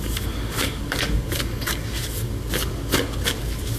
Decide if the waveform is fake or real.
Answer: fake